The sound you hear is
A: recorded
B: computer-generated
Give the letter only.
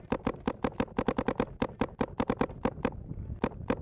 A